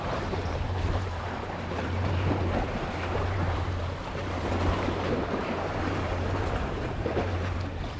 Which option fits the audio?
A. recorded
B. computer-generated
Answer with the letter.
B